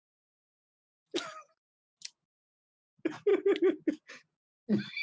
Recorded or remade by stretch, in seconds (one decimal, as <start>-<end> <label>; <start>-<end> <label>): 0.0-5.0 recorded